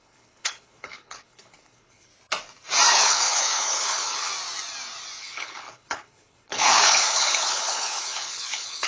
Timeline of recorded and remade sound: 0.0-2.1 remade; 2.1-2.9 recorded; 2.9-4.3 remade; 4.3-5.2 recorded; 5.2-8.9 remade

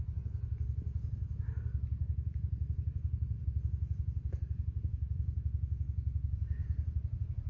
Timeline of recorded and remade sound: 0.0-2.0 recorded; 2.0-3.4 remade; 3.4-6.6 recorded; 6.6-7.5 remade

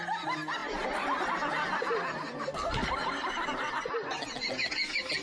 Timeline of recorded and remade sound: 0.0-5.2 recorded

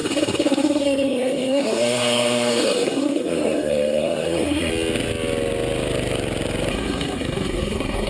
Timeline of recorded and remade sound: 0.0-4.7 remade; 4.7-6.7 recorded; 6.7-8.1 remade

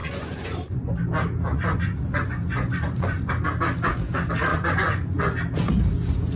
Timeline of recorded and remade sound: 0.0-0.9 remade; 0.9-1.5 recorded; 1.5-3.3 remade; 3.3-4.5 recorded; 4.5-5.2 remade; 5.2-6.4 recorded